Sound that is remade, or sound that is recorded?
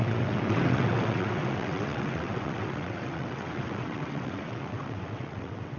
remade